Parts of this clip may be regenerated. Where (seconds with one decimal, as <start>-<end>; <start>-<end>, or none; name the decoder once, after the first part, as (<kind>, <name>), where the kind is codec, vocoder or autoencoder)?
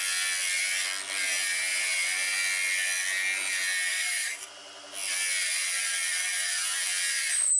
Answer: 3.9-4.5 (codec, DAC)